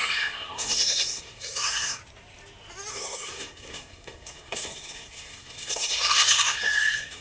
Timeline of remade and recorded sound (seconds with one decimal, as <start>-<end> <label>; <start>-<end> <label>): 0.0-2.0 remade; 2.0-2.9 recorded; 2.9-7.2 remade